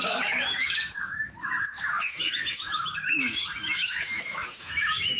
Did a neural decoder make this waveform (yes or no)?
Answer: yes